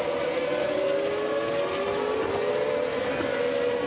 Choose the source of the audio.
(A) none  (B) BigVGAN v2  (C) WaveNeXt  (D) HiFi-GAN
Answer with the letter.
A